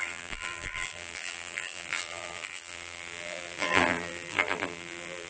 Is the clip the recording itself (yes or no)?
no